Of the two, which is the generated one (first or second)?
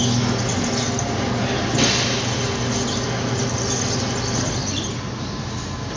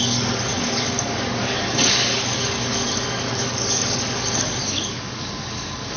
second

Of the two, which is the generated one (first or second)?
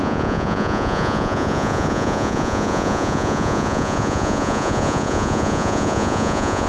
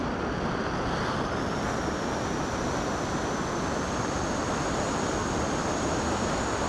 first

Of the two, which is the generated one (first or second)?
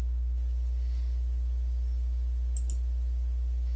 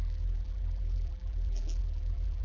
second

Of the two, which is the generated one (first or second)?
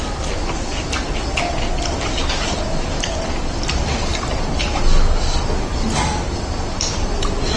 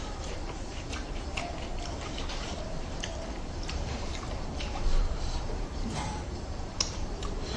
second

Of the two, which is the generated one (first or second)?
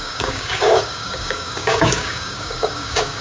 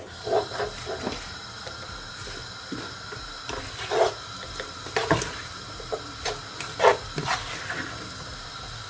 first